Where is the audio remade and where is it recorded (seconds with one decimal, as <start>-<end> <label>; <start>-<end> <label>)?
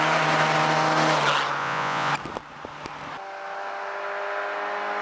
0.0-1.6 recorded; 1.6-2.1 remade; 2.1-5.0 recorded